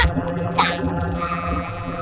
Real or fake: fake